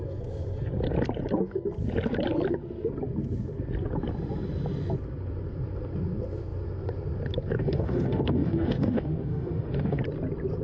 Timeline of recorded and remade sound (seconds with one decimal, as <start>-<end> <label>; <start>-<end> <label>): 0.0-7.6 recorded; 7.6-10.0 remade; 10.0-10.6 recorded